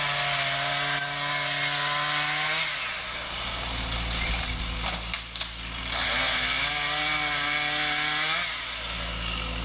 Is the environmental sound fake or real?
real